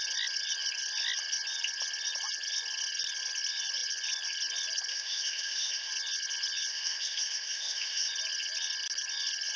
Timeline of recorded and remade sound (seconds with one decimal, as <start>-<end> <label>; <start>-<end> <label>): 0.0-4.9 recorded; 4.9-5.9 remade; 5.9-6.7 recorded; 6.7-8.1 remade; 8.1-9.6 recorded